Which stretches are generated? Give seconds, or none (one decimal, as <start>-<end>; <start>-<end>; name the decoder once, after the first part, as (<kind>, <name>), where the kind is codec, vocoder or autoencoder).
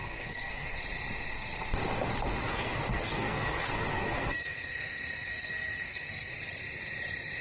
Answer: 0.0-0.8 (codec, SNAC); 2.5-6.3